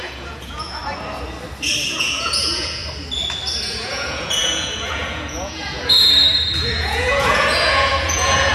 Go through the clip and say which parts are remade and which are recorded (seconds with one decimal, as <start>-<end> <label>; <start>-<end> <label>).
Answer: 0.0-0.8 remade; 0.8-2.0 recorded; 2.0-2.8 remade; 2.8-3.7 recorded; 3.7-8.5 remade